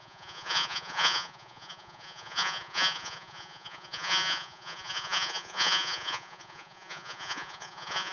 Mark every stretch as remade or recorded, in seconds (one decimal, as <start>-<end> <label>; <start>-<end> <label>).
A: 0.0-8.1 remade